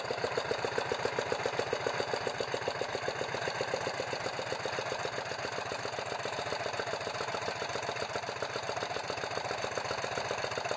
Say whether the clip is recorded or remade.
recorded